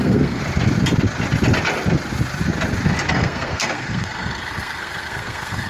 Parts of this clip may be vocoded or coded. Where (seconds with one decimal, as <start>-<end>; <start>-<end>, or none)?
0.0-0.4; 3.1-5.7